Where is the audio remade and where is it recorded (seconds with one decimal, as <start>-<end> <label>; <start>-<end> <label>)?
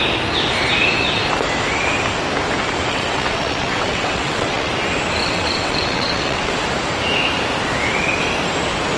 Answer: 0.0-2.9 recorded; 2.9-4.7 remade; 4.7-5.2 recorded; 5.2-6.5 remade; 6.5-9.0 recorded